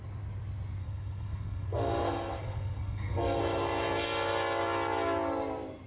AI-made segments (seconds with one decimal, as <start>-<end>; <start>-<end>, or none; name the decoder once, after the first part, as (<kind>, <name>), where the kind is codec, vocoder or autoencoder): 0.8-3.4 (codec, SNAC)